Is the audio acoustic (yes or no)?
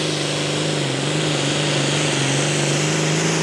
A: yes